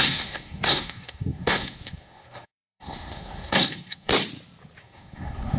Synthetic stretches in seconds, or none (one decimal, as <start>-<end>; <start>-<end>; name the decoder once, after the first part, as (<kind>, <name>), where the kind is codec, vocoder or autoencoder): 0.0-4.1 (codec, SNAC); 4.8-5.6

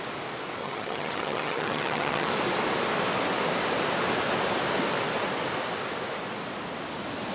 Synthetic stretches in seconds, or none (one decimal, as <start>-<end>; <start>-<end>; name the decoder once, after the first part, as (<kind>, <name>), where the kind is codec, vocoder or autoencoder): 0.6-2.3 (vocoder, HiFi-GAN)

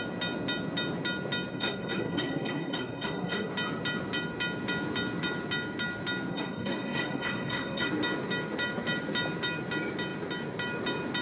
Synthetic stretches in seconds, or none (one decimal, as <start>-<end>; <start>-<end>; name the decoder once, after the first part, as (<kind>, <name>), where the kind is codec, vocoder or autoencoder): 1.5-3.5 (codec, SNAC); 6.3-7.9

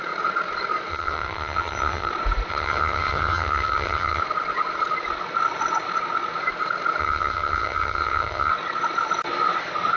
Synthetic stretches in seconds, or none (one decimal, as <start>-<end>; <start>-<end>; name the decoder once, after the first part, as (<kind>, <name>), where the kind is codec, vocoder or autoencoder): 0.9-2.1 (vocoder, HiFi-GAN); 2.5-4.2; 7.0-8.5

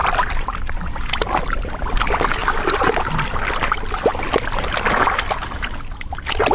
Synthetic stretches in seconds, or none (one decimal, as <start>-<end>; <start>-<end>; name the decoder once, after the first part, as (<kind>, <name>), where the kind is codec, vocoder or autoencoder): none

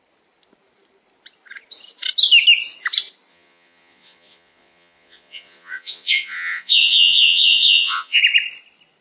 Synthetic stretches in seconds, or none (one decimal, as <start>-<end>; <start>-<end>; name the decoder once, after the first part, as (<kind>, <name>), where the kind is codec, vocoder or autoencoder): 3.3-8.2 (vocoder, Vocos)

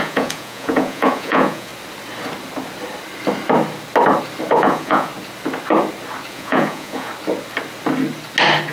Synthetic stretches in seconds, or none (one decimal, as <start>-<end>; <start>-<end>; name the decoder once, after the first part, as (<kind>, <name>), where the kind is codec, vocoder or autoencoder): 0.0-1.7 (vocoder, Vocos); 4.5-5.1; 6.3-7.1